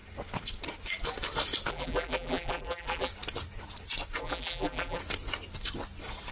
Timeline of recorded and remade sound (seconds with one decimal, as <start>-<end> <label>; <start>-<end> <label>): 0.0-1.7 recorded; 1.7-3.1 remade; 3.1-4.2 recorded; 4.2-5.0 remade; 5.0-6.3 recorded